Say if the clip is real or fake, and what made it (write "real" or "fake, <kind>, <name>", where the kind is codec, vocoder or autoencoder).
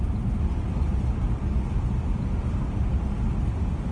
real